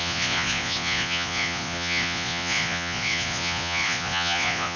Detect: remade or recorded remade